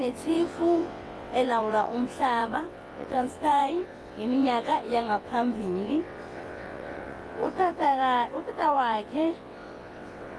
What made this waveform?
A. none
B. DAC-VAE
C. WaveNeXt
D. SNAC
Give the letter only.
C